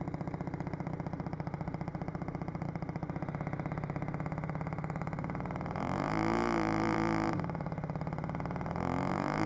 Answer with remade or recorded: remade